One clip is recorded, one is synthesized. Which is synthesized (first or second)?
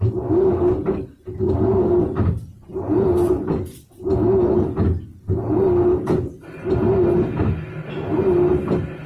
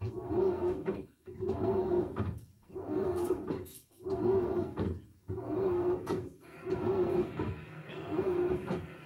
second